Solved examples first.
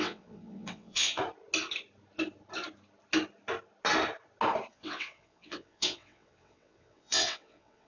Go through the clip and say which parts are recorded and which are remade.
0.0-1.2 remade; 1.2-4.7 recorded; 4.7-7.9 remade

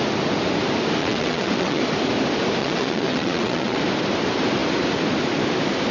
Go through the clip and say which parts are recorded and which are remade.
0.0-1.0 recorded; 1.0-1.8 remade; 1.8-2.6 recorded; 2.6-3.8 remade; 3.8-5.9 recorded

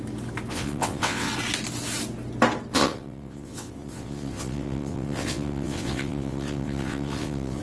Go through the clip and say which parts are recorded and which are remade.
0.0-0.5 recorded; 0.5-1.3 remade; 1.3-2.7 recorded; 2.7-7.6 remade